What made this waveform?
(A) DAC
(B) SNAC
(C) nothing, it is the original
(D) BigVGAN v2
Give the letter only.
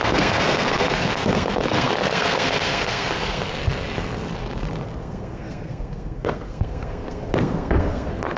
B